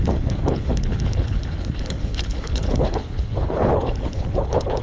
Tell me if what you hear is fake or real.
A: fake